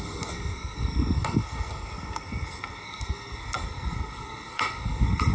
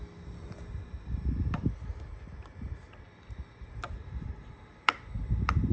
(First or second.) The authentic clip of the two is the second